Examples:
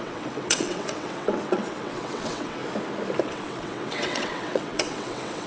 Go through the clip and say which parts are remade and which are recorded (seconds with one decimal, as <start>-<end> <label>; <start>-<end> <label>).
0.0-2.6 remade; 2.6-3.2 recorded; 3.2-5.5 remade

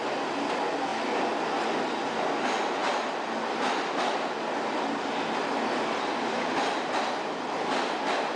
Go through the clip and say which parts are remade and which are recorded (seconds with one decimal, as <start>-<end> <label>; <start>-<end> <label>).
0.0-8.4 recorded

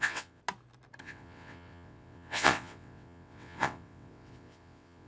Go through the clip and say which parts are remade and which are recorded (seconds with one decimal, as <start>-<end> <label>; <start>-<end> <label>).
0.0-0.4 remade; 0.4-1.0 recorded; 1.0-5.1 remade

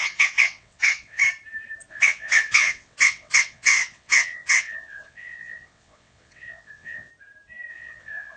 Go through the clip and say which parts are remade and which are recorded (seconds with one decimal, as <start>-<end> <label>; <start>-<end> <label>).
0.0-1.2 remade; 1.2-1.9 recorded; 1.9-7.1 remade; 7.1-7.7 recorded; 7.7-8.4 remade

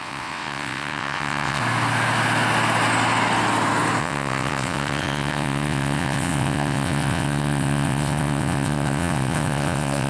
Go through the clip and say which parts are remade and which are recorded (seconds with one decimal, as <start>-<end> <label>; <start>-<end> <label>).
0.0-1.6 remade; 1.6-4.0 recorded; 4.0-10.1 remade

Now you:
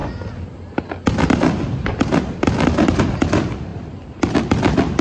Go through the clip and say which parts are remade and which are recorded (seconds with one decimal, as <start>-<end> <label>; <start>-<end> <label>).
0.0-5.0 recorded